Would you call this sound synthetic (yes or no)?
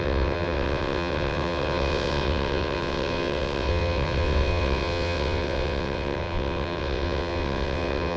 yes